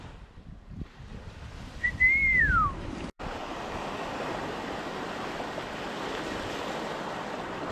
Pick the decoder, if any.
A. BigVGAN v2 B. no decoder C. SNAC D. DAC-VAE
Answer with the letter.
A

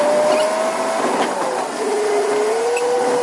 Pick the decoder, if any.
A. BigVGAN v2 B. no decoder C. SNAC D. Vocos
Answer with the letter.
B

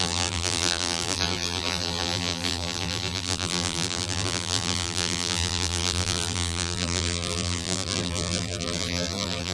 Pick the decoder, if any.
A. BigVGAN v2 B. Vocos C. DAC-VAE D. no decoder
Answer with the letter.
A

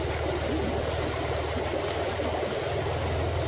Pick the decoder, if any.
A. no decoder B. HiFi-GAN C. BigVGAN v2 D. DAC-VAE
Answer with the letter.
A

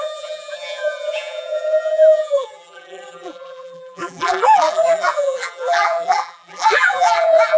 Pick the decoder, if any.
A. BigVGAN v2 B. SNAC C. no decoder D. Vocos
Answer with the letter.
A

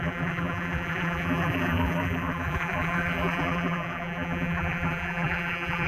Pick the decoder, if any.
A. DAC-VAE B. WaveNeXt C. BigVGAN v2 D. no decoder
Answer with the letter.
C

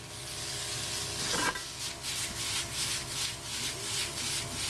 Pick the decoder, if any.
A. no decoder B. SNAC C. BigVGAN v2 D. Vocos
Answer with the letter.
A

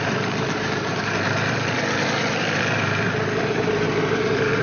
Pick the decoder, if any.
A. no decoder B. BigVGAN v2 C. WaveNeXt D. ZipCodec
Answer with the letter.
B